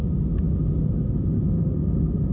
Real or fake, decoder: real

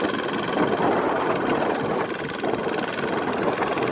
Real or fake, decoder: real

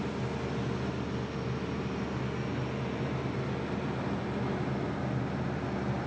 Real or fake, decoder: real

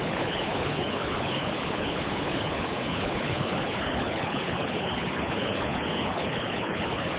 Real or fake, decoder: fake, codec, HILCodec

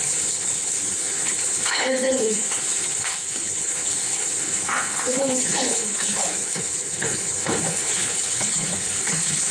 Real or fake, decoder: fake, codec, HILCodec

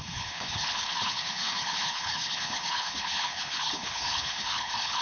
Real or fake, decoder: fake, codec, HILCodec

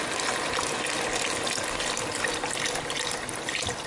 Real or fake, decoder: real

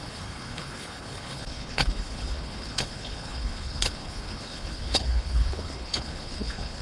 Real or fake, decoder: fake, codec, HILCodec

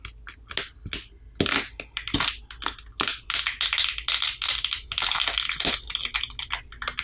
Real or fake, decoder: real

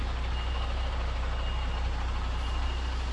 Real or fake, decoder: real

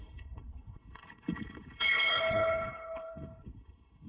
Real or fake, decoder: fake, codec, HILCodec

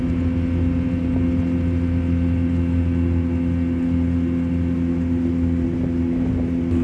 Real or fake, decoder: real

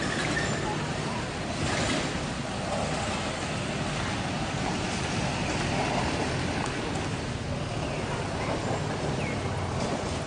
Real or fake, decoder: real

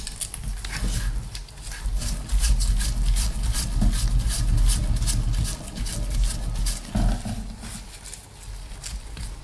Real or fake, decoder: real